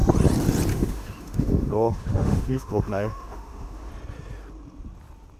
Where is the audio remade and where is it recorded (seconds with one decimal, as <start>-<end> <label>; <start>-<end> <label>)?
0.0-0.7 recorded; 0.7-3.9 remade; 3.9-5.4 recorded